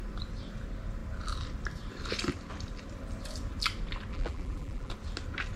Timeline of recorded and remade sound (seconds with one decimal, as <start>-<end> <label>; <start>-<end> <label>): 0.0-4.1 recorded; 4.1-4.9 remade; 4.9-5.6 recorded